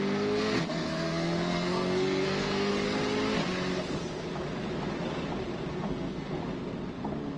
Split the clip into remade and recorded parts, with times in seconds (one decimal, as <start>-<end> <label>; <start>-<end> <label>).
0.0-2.7 remade; 2.7-5.7 recorded; 5.7-6.4 remade; 6.4-7.4 recorded